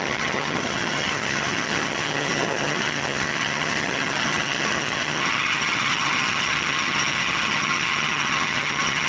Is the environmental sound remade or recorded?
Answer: remade